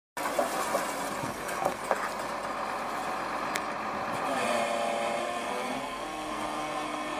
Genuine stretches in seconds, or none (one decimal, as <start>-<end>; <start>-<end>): 0.0-1.2; 1.8-5.2